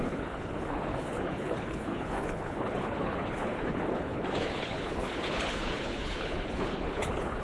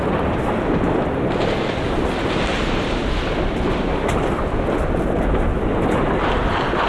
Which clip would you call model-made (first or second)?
first